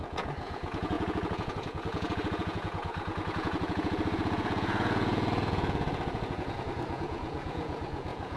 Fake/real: fake